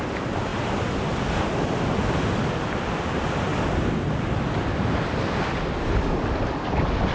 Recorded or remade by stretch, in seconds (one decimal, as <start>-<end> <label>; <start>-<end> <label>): 0.0-7.1 recorded